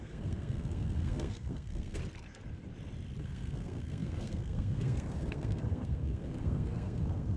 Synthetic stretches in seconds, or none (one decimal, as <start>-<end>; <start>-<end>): 0.0-2.0; 3.2-7.4